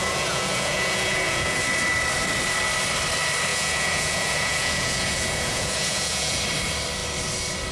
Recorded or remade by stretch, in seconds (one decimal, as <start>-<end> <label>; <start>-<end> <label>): 0.0-1.6 remade; 1.6-3.5 recorded; 3.5-6.4 remade; 6.4-7.7 recorded